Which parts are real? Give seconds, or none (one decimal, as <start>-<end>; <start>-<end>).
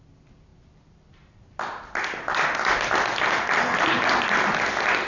0.0-5.1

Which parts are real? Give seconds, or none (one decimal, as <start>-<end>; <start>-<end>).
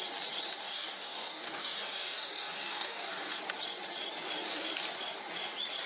0.0-0.6; 3.4-5.9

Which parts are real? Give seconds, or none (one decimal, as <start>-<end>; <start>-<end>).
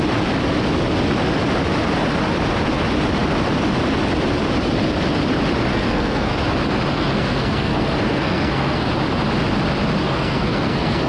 0.0-5.7; 6.4-6.9; 8.9-10.0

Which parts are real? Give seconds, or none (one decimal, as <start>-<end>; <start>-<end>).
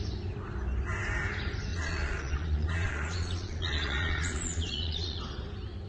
0.0-1.7; 5.2-5.9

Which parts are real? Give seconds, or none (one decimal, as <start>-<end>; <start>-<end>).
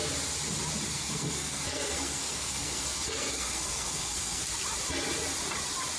0.0-0.9; 4.4-6.0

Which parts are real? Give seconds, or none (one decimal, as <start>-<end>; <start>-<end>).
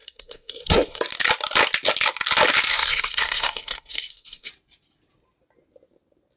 1.0-2.7; 4.5-6.4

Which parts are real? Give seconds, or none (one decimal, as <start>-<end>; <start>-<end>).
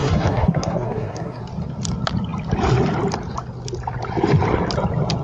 1.4-5.2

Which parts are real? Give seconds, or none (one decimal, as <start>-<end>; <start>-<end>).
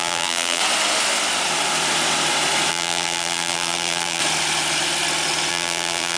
0.6-2.7; 4.2-5.5